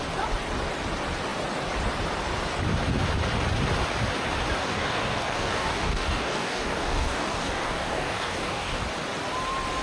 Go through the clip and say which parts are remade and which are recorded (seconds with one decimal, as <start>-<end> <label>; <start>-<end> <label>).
0.0-4.6 recorded; 4.6-8.8 remade; 8.8-9.8 recorded